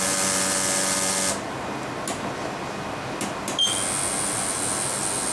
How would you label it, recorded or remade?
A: recorded